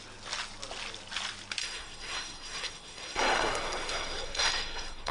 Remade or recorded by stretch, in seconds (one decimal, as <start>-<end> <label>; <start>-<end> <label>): 0.0-1.6 recorded; 1.6-5.1 remade